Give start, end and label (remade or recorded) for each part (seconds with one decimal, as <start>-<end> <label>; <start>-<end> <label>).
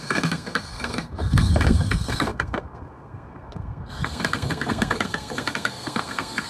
0.0-6.5 remade